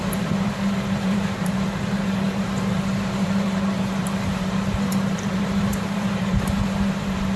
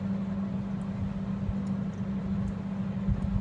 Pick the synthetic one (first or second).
first